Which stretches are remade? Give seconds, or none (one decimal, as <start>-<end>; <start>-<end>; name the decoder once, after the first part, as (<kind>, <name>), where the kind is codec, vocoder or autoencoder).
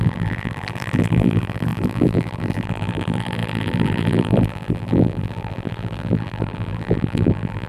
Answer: 0.0-7.7 (vocoder, BigVGAN v2)